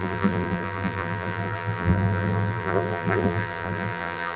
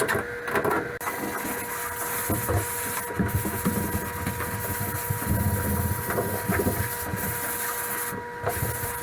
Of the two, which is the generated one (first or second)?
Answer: first